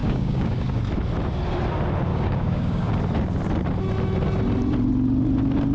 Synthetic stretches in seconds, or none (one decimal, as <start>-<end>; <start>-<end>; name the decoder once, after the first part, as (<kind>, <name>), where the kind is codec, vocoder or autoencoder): 0.0-0.8 (codec, DAC); 2.1-2.9